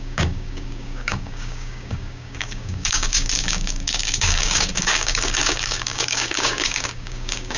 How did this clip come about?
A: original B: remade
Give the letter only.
B